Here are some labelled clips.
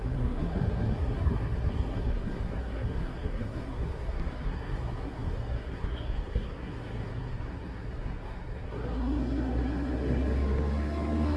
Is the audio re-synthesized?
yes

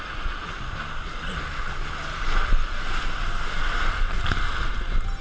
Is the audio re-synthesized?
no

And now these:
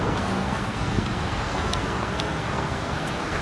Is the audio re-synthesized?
yes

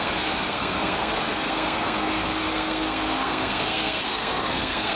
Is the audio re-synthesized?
yes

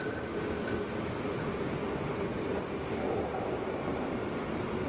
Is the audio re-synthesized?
no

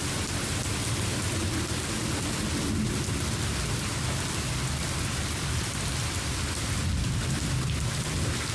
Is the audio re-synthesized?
no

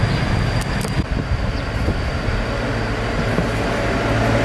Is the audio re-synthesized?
no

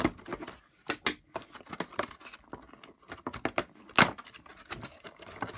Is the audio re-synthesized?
no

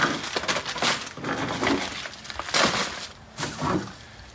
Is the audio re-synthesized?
no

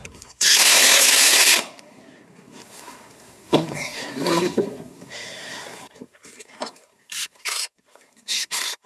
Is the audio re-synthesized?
yes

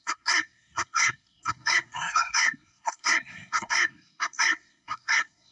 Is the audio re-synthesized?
yes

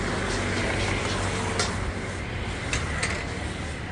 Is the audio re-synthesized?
no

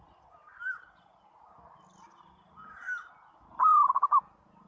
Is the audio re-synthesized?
no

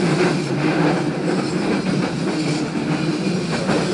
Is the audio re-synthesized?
no